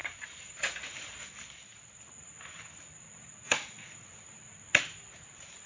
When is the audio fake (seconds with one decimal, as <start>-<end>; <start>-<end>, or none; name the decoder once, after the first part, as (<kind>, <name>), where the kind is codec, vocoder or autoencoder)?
0.0-0.5 (vocoder, BigVGAN v2)